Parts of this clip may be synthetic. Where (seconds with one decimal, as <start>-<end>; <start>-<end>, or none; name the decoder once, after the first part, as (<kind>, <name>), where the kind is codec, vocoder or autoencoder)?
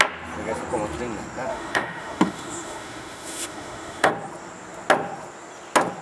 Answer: 1.5-4.1 (autoencoder, DAC-VAE)